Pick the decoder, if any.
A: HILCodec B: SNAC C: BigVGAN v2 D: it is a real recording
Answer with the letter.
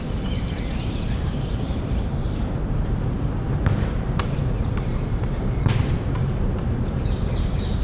C